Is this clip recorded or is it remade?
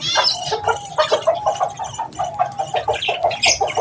recorded